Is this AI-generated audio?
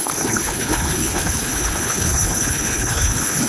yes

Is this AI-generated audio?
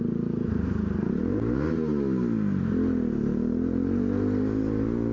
no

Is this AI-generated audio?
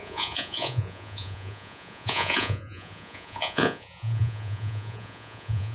yes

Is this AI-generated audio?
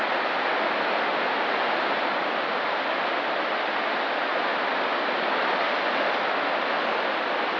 no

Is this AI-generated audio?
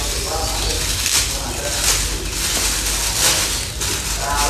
no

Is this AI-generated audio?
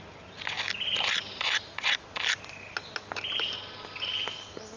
no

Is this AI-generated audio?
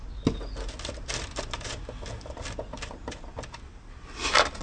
no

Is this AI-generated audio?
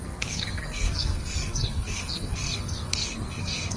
yes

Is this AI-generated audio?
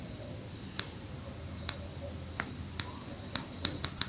no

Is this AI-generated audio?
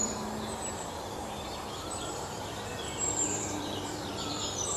yes